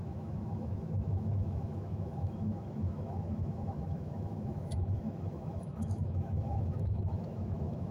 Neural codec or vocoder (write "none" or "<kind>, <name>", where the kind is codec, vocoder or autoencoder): autoencoder, DAC-VAE